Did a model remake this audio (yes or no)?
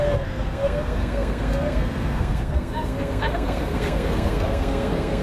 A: yes